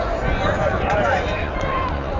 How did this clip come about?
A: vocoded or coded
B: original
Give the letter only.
A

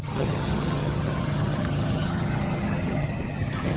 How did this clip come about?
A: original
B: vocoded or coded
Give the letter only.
B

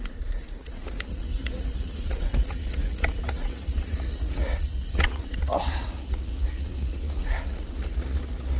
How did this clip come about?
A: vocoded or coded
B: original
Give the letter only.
A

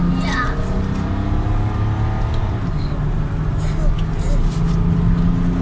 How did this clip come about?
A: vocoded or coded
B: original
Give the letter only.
B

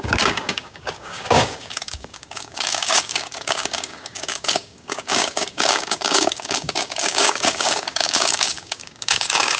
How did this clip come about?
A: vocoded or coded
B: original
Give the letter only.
A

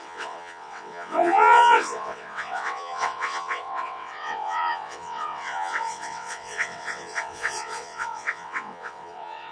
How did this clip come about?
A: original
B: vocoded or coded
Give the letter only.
B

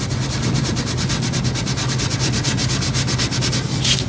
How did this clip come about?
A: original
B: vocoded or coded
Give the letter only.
A